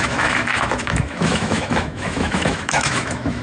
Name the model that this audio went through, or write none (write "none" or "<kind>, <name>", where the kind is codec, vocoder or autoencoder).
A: autoencoder, DAC-VAE